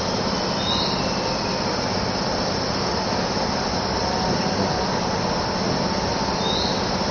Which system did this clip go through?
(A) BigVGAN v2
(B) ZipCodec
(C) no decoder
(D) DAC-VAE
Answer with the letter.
C